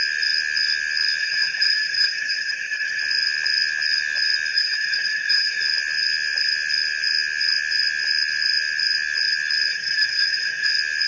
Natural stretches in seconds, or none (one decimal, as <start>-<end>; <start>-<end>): 0.0-1.2; 3.0-4.5; 5.6-9.7; 10.7-11.1